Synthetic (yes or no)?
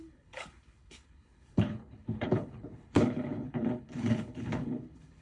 yes